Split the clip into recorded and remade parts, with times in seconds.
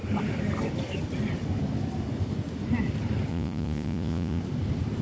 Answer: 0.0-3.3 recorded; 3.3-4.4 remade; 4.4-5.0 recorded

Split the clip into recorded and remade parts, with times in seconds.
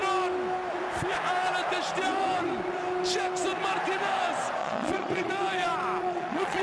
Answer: 0.0-4.6 recorded; 4.6-5.3 remade; 5.3-6.0 recorded; 6.0-6.6 remade